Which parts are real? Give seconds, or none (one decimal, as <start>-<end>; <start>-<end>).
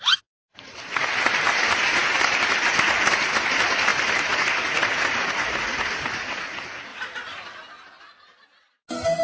0.0-2.0; 3.0-3.9; 4.9-6.9; 7.7-9.2